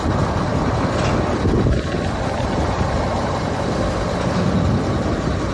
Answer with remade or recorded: recorded